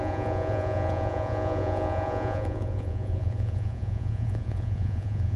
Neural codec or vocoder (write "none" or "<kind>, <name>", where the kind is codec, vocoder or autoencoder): vocoder, Vocos